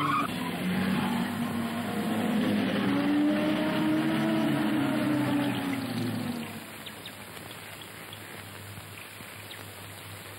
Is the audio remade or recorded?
recorded